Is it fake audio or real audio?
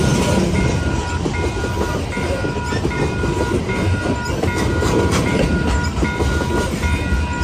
real